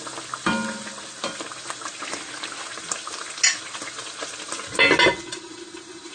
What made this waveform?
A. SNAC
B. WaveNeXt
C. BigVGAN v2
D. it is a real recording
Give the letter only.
D